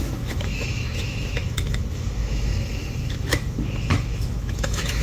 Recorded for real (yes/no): no